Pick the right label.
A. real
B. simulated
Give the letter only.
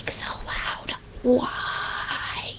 A